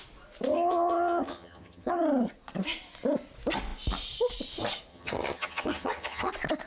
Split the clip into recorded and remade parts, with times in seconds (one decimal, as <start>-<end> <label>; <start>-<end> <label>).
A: 0.0-0.5 recorded; 0.5-2.0 remade; 2.0-4.9 recorded; 4.9-6.3 remade; 6.3-6.7 recorded